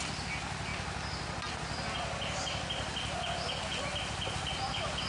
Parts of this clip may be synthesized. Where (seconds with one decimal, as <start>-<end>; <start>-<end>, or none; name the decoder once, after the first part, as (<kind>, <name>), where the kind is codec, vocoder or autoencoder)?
none